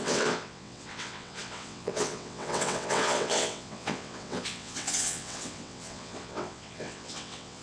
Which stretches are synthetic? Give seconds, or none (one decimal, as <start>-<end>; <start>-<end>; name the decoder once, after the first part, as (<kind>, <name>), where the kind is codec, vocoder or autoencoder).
0.0-7.6 (vocoder, WaveNeXt)